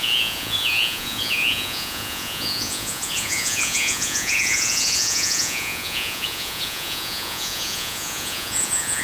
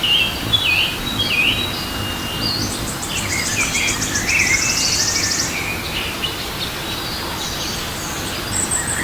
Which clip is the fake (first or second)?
first